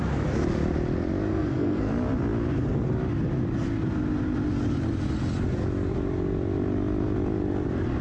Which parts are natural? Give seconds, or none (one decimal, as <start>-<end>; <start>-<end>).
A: 0.0-1.3; 1.9-8.0